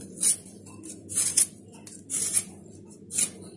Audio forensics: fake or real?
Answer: real